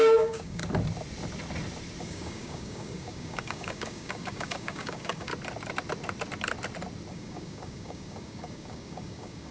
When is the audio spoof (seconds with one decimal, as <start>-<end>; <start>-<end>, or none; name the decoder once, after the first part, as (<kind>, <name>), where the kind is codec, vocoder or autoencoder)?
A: 0.0-0.6 (codec, DAC); 2.0-5.3; 7.1-9.5